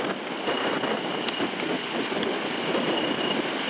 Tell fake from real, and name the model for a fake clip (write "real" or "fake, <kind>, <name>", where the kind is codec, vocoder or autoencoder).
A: real